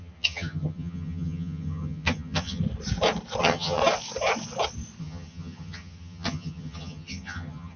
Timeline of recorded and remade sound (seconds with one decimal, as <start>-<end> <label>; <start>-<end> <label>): 0.0-2.6 remade; 2.6-3.4 recorded; 3.4-3.8 remade; 3.8-5.0 recorded; 5.0-7.8 remade